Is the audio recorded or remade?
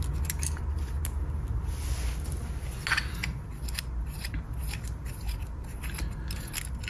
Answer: recorded